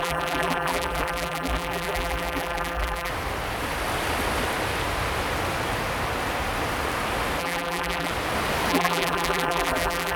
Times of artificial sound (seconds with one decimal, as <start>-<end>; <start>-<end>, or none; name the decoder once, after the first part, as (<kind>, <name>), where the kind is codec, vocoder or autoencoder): 0.0-3.1 (vocoder, BigVGAN v2); 7.4-8.1; 8.7-10.2